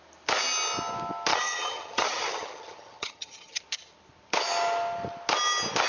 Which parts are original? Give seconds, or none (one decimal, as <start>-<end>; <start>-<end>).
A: 0.0-1.3; 3.6-5.9

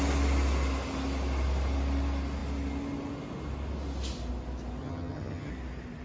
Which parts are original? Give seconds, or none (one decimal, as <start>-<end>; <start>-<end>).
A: 0.0-4.8; 5.5-6.0

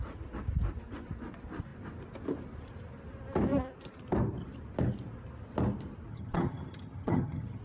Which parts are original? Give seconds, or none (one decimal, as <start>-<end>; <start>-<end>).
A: 0.0-6.1